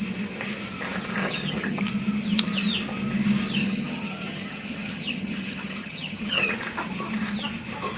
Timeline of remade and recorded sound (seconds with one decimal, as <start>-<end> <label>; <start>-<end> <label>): 0.0-1.2 recorded; 1.2-1.8 remade; 1.8-3.6 recorded; 3.6-6.5 remade; 6.5-8.0 recorded